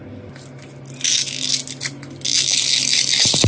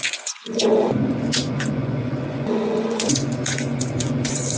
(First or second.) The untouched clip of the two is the first